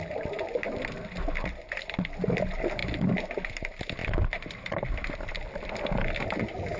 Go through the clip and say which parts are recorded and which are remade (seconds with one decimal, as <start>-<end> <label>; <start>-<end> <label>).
0.0-4.0 recorded; 4.0-5.6 remade; 5.6-6.8 recorded